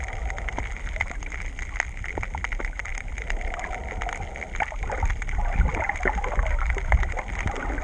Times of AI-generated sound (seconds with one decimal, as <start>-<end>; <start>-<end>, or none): none